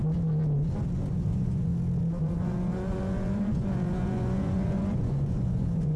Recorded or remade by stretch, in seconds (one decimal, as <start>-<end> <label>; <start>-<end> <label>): 0.0-1.1 recorded; 1.1-1.7 remade; 1.7-2.2 recorded; 2.2-6.0 remade